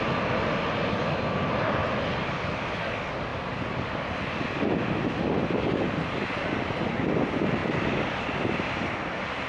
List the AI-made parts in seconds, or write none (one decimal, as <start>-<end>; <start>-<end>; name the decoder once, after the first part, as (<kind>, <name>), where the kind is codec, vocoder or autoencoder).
1.8-2.9 (vocoder, BigVGAN v2); 3.3-5.2; 7.6-9.5